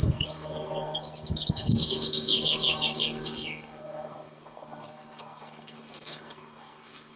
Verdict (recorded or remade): remade